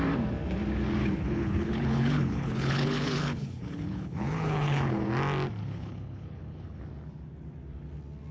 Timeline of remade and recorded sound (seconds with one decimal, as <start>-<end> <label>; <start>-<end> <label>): 0.0-1.0 recorded; 1.0-5.1 remade; 5.1-5.6 recorded; 5.6-6.8 remade; 6.8-8.3 recorded